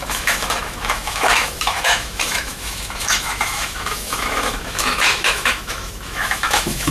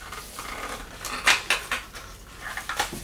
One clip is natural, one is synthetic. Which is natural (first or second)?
second